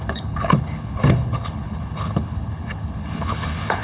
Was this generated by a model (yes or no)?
yes